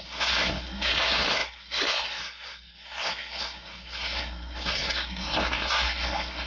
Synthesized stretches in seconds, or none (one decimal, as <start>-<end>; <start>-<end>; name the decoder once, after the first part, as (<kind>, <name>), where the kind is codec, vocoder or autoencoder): 0.0-6.5 (codec, SNAC)